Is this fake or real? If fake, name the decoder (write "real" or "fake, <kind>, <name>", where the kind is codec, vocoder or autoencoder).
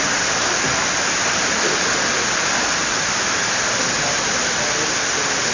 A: real